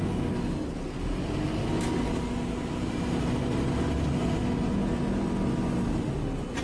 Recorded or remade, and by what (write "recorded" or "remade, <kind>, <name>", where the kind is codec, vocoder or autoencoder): recorded